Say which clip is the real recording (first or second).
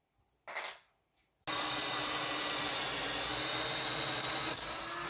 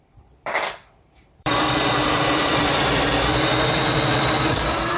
first